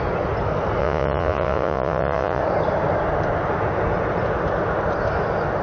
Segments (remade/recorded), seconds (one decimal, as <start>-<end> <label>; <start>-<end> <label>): 0.0-0.8 recorded; 0.8-2.4 remade; 2.4-5.6 recorded